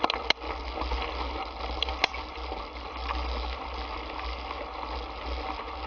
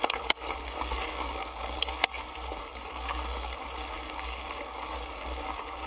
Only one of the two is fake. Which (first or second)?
second